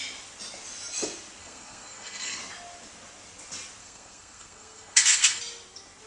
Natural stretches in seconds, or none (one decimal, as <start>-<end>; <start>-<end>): 0.0-1.4; 2.4-3.8; 5.4-6.1